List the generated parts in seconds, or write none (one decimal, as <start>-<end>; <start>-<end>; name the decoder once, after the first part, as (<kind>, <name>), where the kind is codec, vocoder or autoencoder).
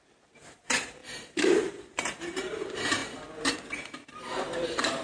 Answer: 0.0-3.0 (vocoder, BigVGAN v2); 4.1-5.0